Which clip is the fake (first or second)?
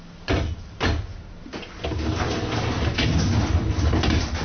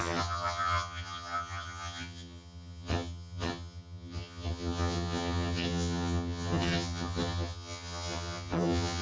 second